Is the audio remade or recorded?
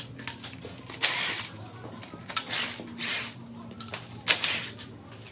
recorded